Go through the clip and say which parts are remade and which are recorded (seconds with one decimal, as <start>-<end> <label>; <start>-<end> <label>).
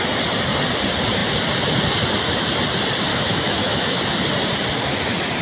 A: 0.0-3.1 recorded; 3.1-4.0 remade; 4.0-5.4 recorded